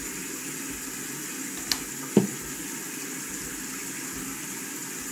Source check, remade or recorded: recorded